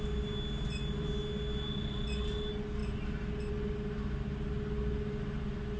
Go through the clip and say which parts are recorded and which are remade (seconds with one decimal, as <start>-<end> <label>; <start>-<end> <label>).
0.0-5.8 recorded